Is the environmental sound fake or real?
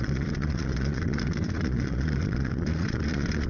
fake